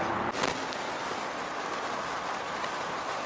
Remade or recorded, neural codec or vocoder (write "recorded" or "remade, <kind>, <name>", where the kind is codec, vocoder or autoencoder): recorded